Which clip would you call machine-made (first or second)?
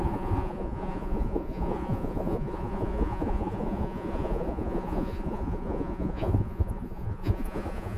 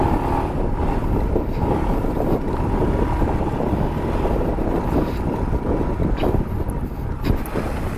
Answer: first